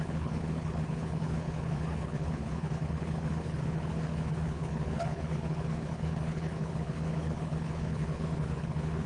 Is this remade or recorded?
remade